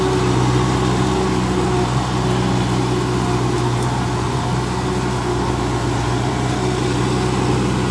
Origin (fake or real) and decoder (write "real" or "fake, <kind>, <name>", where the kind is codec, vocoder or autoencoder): real